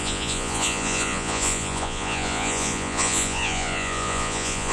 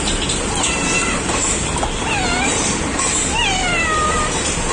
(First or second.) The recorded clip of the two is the second